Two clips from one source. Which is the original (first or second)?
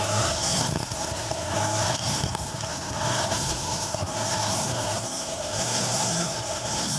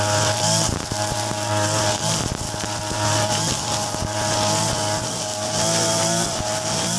second